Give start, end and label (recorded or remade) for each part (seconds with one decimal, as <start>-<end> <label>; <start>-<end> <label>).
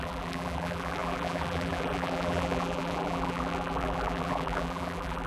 0.0-5.3 remade